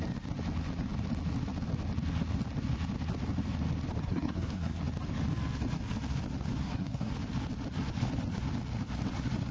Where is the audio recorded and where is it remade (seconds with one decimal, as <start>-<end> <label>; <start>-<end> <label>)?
0.0-4.0 recorded; 4.0-4.8 remade; 4.8-6.6 recorded; 6.6-7.1 remade; 7.1-9.5 recorded